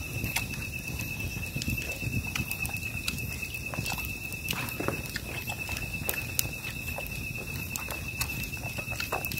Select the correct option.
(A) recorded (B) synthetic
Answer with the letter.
A